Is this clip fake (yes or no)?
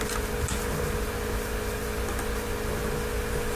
no